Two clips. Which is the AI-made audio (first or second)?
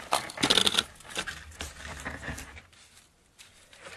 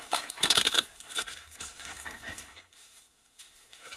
second